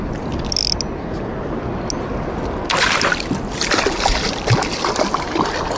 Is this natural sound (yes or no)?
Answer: yes